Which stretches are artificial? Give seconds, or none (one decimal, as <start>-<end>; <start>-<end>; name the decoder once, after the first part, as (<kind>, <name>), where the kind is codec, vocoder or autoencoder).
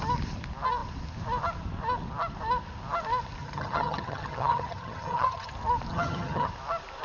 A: 3.4-5.5 (vocoder, HiFi-GAN); 5.9-6.5